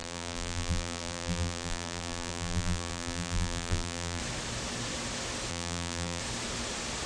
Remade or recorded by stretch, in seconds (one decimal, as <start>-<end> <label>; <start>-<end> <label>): 0.0-4.2 remade; 4.2-5.5 recorded; 5.5-6.2 remade; 6.2-7.1 recorded